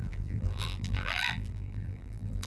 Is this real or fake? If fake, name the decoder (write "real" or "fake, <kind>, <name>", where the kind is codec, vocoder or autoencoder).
fake, vocoder, BigVGAN v2